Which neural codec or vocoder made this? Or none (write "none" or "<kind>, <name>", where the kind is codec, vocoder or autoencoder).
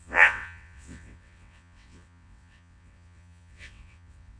vocoder, WaveNeXt